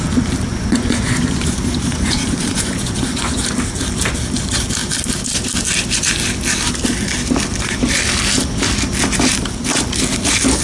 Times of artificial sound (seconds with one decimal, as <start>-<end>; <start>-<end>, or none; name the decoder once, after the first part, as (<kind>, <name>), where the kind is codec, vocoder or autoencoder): 0.5-3.4 (vocoder, Vocos)